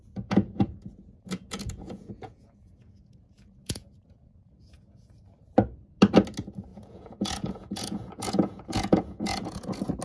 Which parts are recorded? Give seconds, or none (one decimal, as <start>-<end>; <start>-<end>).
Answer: 5.2-6.7